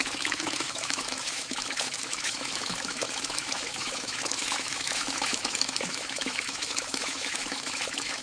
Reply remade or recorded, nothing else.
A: remade